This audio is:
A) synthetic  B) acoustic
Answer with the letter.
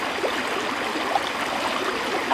B